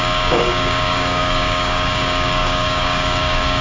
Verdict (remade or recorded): remade